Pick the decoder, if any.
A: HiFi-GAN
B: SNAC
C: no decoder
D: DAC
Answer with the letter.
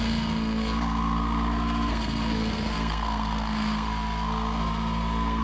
B